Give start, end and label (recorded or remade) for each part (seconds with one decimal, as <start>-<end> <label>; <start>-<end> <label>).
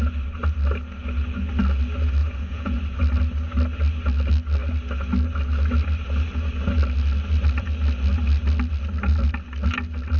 0.0-2.2 recorded; 2.2-2.8 remade; 2.8-10.2 recorded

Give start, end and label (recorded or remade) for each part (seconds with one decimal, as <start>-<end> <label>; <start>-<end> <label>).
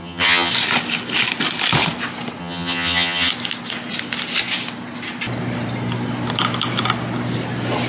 0.0-0.5 remade; 0.5-2.4 recorded; 2.4-3.3 remade; 3.3-7.9 recorded